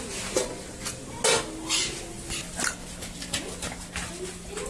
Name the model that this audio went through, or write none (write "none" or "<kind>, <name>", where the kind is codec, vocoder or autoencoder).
none